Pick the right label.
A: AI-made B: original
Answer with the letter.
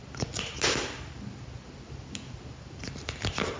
B